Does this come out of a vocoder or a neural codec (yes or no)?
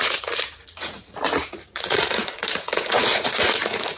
yes